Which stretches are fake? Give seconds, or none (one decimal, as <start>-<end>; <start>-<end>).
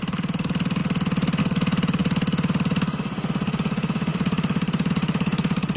0.0-0.8; 1.4-2.0; 3.3-5.8